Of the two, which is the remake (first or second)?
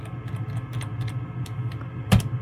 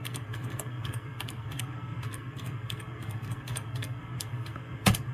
second